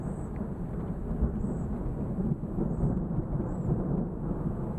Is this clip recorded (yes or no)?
yes